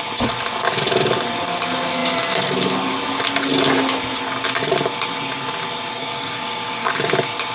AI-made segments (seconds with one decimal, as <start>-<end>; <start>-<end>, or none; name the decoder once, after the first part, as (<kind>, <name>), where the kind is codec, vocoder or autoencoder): 6.0-6.9 (codec, DAC)